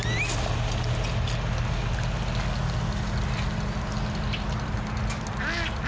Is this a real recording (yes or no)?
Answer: yes